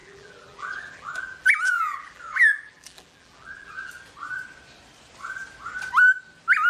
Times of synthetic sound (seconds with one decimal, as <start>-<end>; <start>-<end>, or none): 0.0-3.9